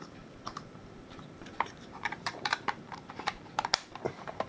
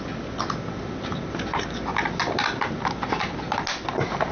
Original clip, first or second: second